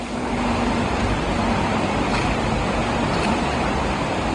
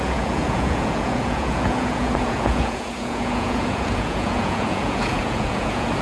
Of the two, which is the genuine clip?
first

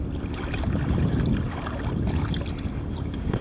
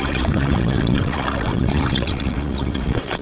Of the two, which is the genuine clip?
first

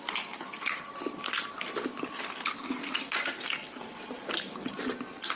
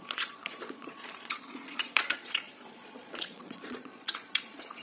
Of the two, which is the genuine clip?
first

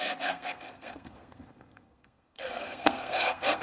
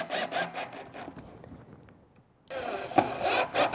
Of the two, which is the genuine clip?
second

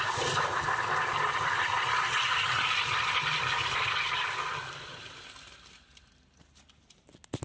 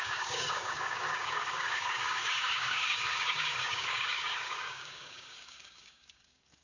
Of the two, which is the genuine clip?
first